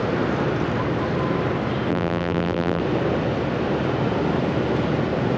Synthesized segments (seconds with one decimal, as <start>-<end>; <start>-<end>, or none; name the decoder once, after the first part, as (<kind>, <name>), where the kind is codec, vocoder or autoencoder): 1.9-2.8 (vocoder, BigVGAN v2)